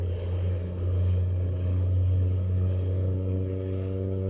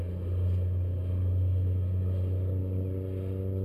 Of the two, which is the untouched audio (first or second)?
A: second